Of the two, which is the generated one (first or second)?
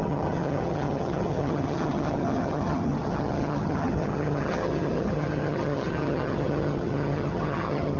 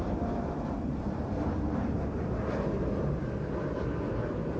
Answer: first